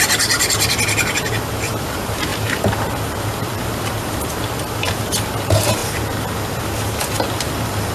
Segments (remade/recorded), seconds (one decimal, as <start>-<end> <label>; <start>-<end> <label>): 0.0-7.9 recorded